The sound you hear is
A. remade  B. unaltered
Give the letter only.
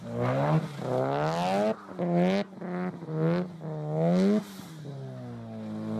B